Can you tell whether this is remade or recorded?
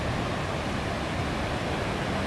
recorded